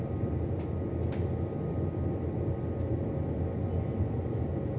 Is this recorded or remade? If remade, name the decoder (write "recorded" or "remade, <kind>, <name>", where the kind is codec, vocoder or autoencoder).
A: recorded